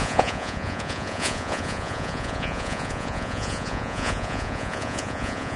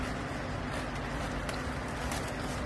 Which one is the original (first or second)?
second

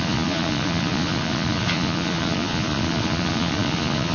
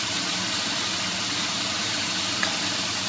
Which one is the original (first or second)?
second